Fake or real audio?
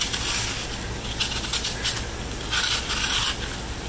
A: real